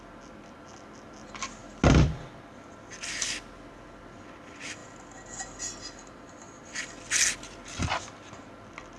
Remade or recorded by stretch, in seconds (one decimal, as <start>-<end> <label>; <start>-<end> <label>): 0.0-9.0 recorded